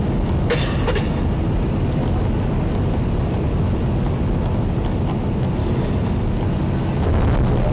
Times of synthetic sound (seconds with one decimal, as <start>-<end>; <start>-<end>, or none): 5.6-6.2